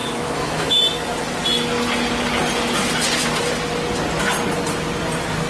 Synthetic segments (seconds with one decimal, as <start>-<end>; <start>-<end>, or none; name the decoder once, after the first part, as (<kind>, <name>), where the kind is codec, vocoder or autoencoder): 0.0-0.8 (autoencoder, DAC-VAE)